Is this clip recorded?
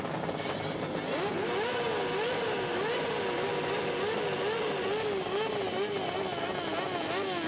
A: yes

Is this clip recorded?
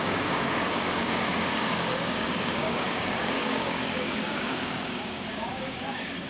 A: no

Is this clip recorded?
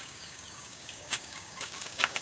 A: no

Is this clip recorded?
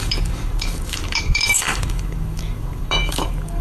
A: no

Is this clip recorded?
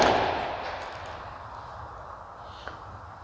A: yes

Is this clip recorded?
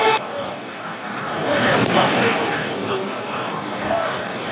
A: no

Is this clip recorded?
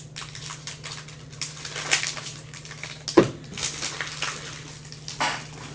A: yes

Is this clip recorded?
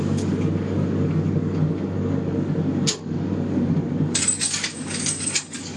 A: no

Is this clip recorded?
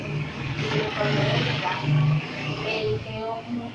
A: no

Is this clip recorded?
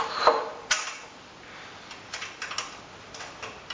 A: yes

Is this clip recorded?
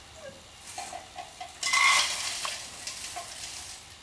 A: yes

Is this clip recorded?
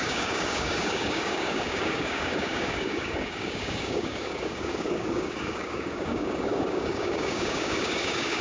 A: no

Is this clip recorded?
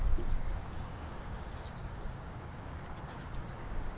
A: no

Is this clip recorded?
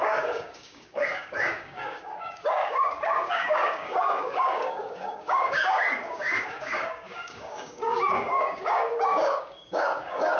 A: no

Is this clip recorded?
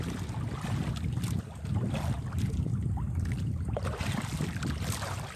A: yes